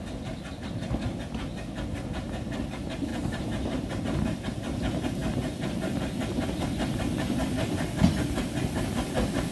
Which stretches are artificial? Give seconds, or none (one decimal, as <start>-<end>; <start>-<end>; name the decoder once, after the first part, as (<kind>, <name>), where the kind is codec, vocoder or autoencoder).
3.1-4.0 (vocoder, BigVGAN v2)